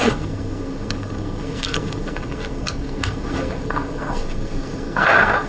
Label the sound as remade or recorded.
remade